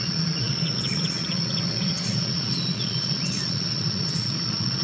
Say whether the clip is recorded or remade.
remade